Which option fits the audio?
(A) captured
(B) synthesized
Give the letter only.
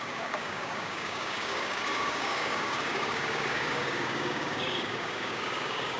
B